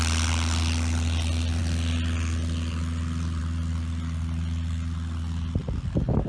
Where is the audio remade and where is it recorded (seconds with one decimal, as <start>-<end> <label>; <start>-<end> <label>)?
0.0-6.3 recorded

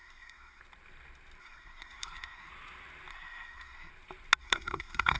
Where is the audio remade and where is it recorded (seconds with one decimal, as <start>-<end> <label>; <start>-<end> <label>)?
0.0-0.6 remade; 0.6-1.4 recorded; 1.4-2.5 remade; 2.5-3.1 recorded; 3.1-3.9 remade; 3.9-4.4 recorded; 4.4-5.2 remade